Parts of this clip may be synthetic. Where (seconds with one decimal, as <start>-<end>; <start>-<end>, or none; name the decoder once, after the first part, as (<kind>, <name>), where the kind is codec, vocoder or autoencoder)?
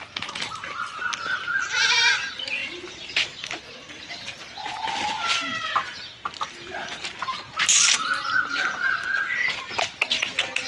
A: none